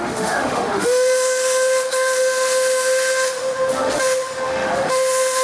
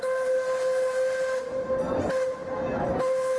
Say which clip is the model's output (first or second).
first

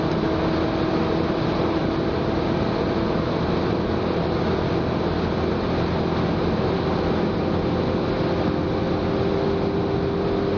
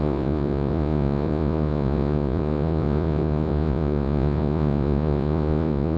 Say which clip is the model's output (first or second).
second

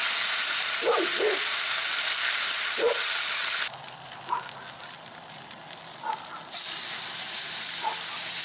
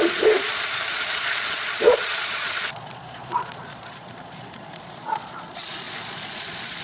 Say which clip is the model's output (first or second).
second